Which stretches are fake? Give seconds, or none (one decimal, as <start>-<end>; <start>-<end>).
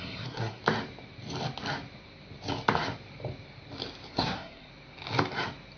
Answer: 0.0-0.6; 4.1-4.7